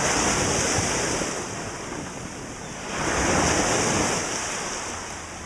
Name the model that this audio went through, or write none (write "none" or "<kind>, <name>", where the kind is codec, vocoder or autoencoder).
none